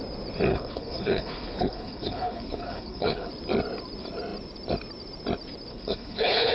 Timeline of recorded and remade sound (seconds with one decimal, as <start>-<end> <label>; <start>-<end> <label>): 0.0-0.5 recorded; 0.5-3.3 remade; 3.3-5.7 recorded; 5.7-6.5 remade